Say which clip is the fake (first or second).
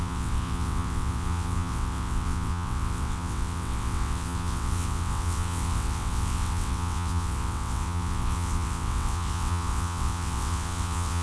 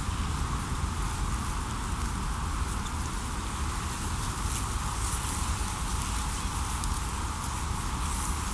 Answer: first